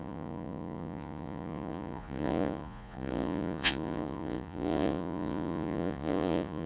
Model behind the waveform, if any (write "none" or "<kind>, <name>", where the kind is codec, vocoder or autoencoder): vocoder, Vocos